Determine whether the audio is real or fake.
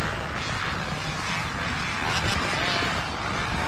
real